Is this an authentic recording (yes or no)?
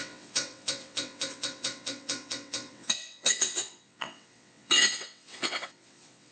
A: no